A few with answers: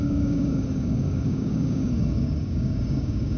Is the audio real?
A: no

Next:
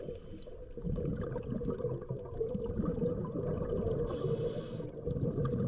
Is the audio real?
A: yes